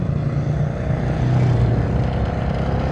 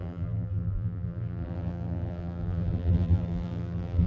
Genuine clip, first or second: first